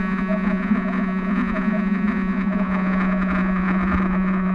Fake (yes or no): yes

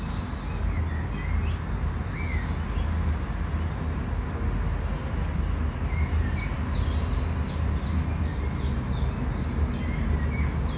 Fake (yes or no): no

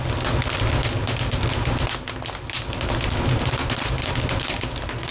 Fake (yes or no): no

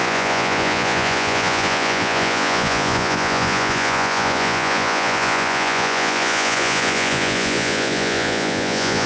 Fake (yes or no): yes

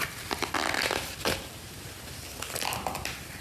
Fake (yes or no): no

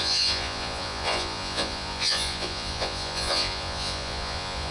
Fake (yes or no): yes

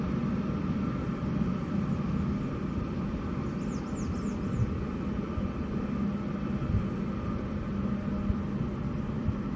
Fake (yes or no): no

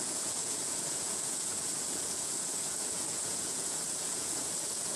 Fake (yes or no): yes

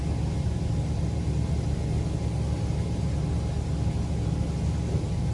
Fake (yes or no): no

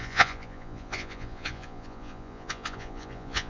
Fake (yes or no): yes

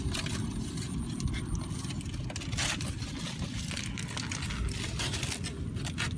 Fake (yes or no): no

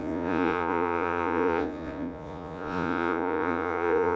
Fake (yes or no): yes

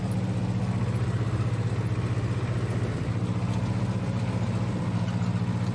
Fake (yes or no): no